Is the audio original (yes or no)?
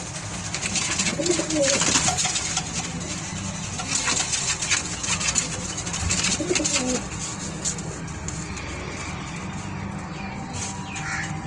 yes